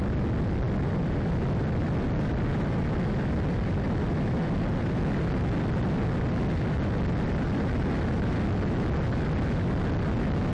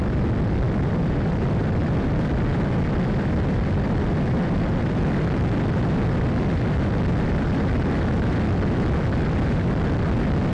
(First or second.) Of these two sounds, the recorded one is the first